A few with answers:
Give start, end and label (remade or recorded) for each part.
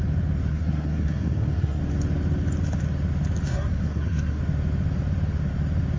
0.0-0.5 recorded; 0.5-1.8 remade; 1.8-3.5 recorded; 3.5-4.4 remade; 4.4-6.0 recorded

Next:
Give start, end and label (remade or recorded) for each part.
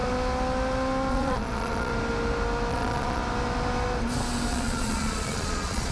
0.0-1.1 recorded; 1.1-1.9 remade; 1.9-2.7 recorded; 2.7-3.2 remade; 3.2-4.5 recorded; 4.5-5.9 remade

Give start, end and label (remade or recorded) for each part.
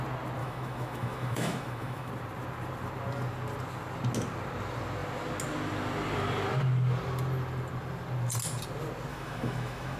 0.0-0.4 recorded; 0.4-2.1 remade; 2.1-9.1 recorded; 9.1-10.0 remade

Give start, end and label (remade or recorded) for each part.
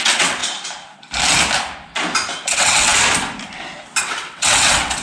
0.0-0.4 remade; 0.4-2.5 recorded; 2.5-2.9 remade; 2.9-4.0 recorded; 4.0-5.0 remade